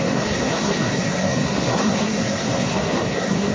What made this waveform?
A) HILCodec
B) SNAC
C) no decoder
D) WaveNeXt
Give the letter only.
B